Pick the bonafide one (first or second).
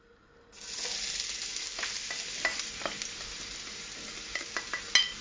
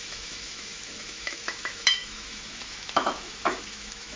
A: first